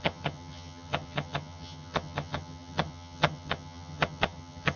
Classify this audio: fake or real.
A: fake